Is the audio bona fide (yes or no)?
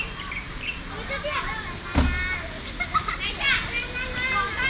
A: yes